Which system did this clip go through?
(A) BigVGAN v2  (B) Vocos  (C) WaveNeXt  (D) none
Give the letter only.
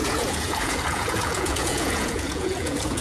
B